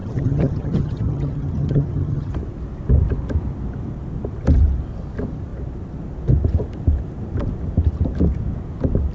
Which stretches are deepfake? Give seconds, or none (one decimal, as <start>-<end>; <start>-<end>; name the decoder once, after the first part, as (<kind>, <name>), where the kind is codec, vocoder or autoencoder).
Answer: 0.0-2.3 (vocoder, HiFi-GAN)